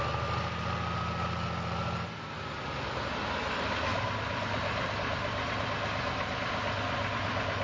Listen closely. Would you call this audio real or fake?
real